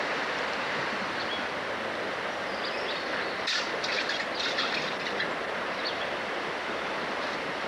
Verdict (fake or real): fake